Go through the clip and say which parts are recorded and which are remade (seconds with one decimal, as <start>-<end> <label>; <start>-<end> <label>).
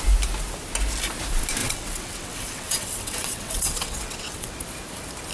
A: 0.0-1.6 recorded; 1.6-4.6 remade; 4.6-5.3 recorded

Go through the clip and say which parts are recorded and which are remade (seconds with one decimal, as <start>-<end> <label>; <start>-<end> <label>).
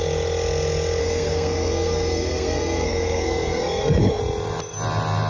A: 0.0-1.0 recorded; 1.0-4.2 remade; 4.2-5.3 recorded